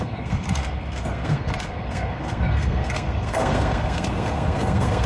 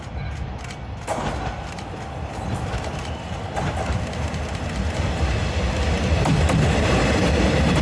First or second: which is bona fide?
second